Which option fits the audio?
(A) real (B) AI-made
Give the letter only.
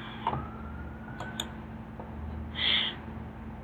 A